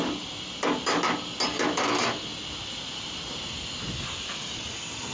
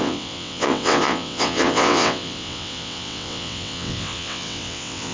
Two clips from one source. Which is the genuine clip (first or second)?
first